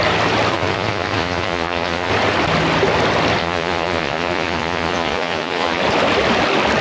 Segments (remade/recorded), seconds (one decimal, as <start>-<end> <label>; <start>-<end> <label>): 0.0-0.5 recorded; 0.5-2.1 remade; 2.1-3.4 recorded; 3.4-5.8 remade; 5.8-6.8 recorded